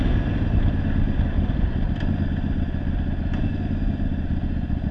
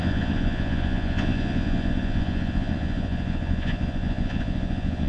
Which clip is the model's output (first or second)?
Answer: second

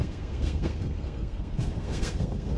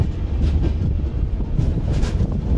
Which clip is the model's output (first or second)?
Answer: first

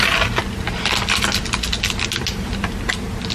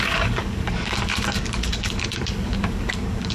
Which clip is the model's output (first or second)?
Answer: second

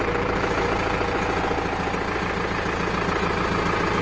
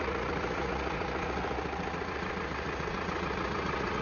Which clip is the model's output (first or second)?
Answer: second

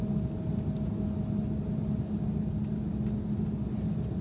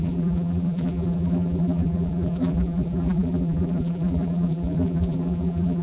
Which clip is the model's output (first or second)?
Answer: second